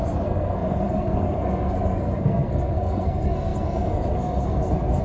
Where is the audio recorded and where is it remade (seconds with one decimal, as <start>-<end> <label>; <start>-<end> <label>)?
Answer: 0.0-5.0 remade